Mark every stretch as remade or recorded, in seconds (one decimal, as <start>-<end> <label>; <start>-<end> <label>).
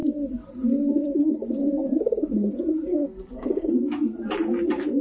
0.0-2.9 recorded; 2.9-3.7 remade; 3.7-5.0 recorded